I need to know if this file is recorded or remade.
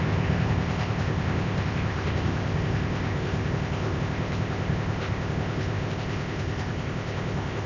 remade